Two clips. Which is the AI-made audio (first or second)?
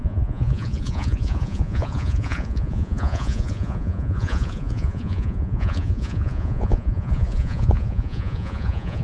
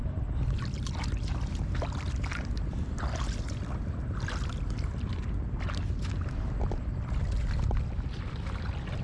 first